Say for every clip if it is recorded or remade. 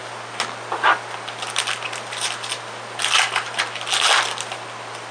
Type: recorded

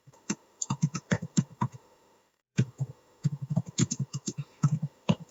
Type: remade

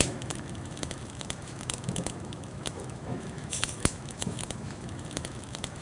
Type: remade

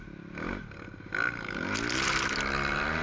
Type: recorded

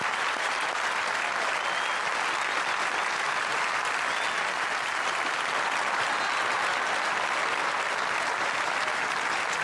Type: recorded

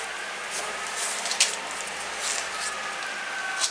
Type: recorded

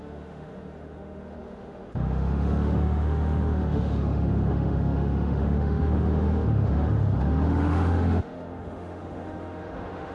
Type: remade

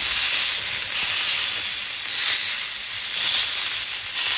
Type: recorded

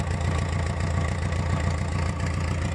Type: recorded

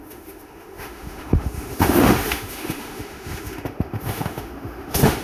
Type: remade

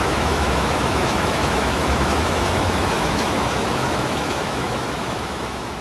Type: remade